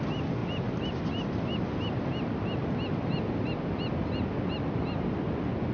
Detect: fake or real real